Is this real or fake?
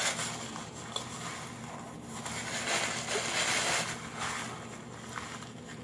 real